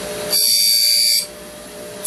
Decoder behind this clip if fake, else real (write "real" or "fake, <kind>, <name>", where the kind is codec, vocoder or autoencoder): real